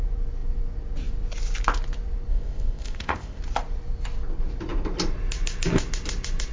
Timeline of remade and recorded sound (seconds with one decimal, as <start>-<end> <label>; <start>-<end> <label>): 0.0-2.3 recorded; 2.3-3.4 remade; 3.4-6.5 recorded